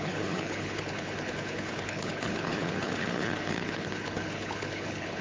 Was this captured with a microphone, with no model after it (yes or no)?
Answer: no